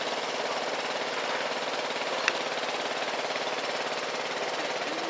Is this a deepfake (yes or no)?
no